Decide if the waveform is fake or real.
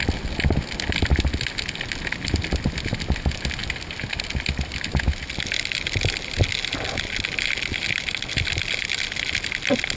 real